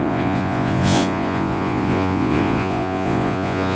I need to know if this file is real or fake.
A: fake